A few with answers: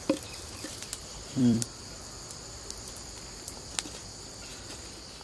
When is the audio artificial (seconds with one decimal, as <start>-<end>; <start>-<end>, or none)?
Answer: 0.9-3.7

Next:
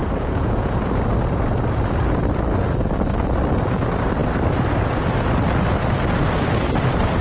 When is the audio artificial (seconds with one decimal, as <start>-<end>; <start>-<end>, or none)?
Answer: 0.0-0.9

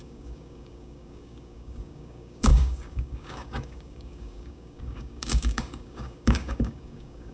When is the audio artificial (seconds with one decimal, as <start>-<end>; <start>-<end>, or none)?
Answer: 0.0-7.3

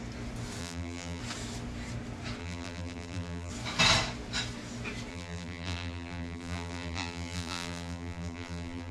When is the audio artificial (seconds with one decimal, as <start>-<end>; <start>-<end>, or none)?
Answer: 0.6-1.2; 2.4-3.5; 5.1-8.9